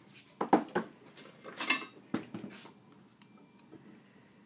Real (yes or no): yes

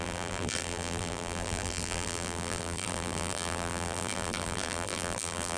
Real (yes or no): no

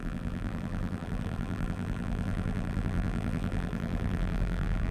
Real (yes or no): no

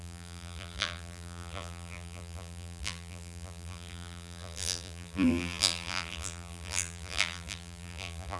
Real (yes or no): no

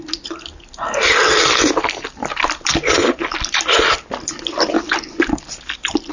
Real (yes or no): yes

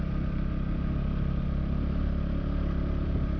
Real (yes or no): yes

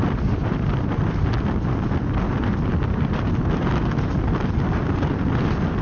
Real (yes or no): yes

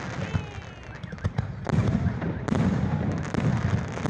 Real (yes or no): yes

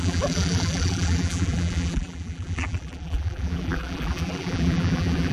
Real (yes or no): no